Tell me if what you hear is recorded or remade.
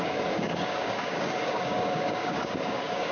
remade